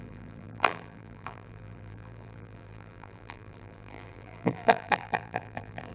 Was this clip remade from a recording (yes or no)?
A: yes